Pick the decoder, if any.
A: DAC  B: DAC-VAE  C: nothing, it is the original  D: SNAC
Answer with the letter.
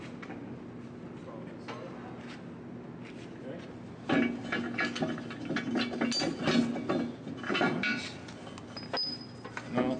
C